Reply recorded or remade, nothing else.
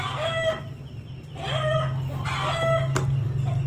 recorded